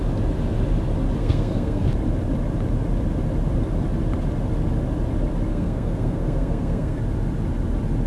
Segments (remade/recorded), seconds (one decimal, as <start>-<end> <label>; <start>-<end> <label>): 0.0-1.2 recorded; 1.2-1.9 remade; 1.9-5.5 recorded; 5.5-7.0 remade; 7.0-8.1 recorded